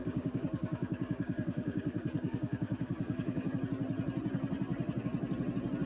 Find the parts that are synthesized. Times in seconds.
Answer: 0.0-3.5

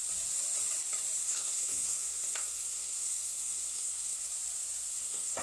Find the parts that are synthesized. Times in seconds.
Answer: 1.2-4.3; 4.9-5.4

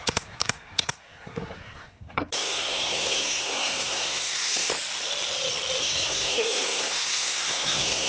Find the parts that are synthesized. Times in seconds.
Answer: 0.0-4.7; 5.8-8.1

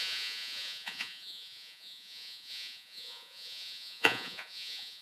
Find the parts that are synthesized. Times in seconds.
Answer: 0.0-5.0

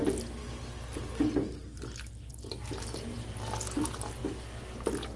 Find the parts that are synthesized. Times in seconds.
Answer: none

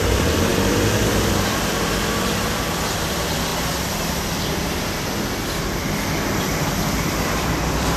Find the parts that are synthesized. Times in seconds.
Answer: 0.0-3.5; 6.4-8.0